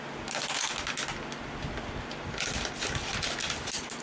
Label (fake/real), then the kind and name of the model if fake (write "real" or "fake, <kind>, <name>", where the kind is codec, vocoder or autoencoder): real